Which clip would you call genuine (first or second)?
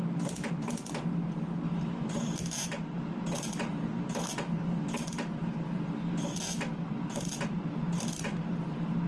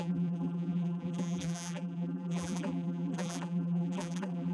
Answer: first